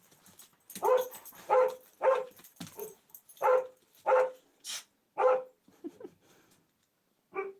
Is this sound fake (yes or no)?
no